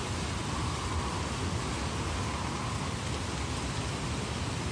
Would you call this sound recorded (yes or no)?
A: yes